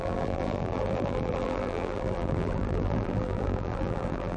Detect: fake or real fake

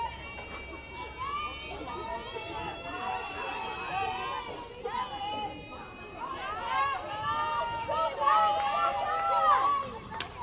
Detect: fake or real real